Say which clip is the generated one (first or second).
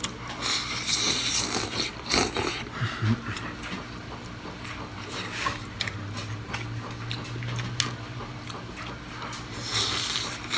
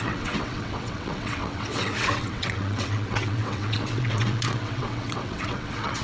second